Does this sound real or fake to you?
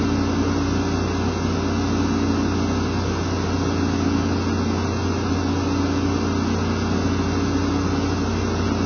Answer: real